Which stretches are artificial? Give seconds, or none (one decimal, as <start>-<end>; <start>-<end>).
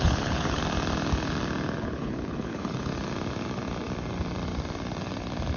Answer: 0.0-0.6; 1.8-2.9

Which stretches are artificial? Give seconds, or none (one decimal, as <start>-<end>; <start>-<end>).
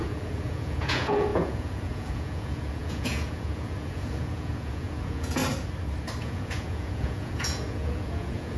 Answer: 0.0-5.4; 6.2-8.6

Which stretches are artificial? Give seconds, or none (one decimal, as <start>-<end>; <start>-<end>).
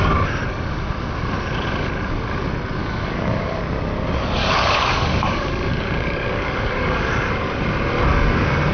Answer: 2.8-3.6; 4.4-7.1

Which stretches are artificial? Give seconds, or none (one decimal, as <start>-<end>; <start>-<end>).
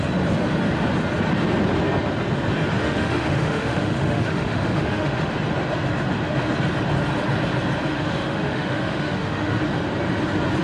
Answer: 2.8-5.3; 7.9-9.6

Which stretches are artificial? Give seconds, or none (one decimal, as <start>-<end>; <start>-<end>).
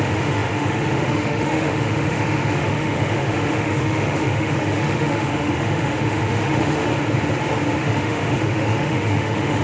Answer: 0.0-6.9; 7.8-9.6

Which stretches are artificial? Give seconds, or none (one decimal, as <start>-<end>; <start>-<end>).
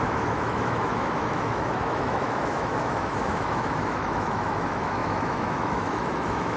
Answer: 0.0-6.6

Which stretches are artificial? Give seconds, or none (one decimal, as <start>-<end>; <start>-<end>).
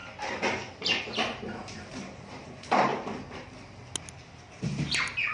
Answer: 1.0-2.9; 4.5-5.3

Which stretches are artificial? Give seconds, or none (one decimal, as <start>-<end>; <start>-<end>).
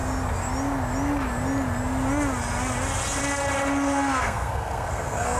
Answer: 4.2-5.4